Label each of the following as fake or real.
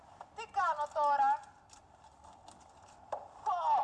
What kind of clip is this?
real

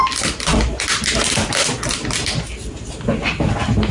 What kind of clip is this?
real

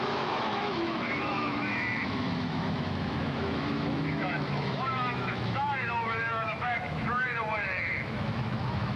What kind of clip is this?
fake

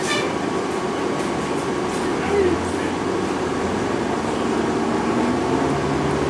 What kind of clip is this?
real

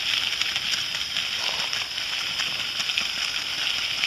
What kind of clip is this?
real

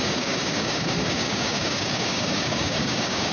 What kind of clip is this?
fake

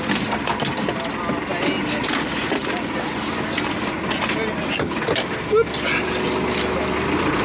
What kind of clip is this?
real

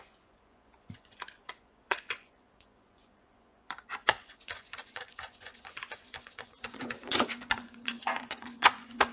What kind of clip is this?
fake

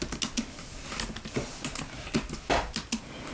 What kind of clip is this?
real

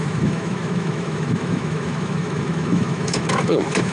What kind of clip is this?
fake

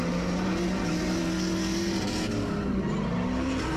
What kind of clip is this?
real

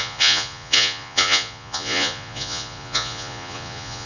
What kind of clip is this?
fake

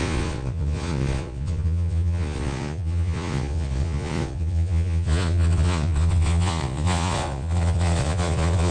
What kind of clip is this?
fake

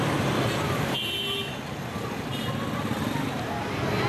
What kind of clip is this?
real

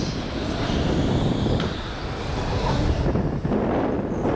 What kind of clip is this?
real